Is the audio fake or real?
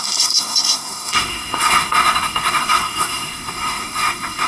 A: fake